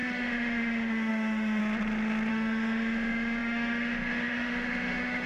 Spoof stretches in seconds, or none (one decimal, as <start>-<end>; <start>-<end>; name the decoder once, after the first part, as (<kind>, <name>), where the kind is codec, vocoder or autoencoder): 0.0-1.6 (autoencoder, DAC-VAE); 2.3-5.3